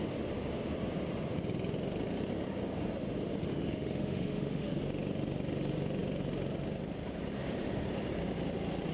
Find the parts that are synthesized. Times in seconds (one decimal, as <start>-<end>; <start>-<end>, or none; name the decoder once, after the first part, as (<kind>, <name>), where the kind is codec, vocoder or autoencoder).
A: 3.5-4.8 (autoencoder, DAC-VAE)